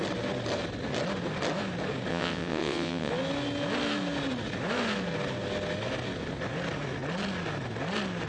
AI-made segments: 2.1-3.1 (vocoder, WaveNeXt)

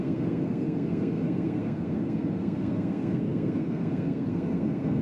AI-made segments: 0.0-5.0 (codec, SNAC)

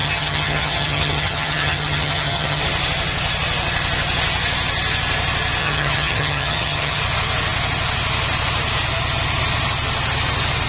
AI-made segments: 0.0-2.6 (vocoder, HiFi-GAN); 5.6-7.0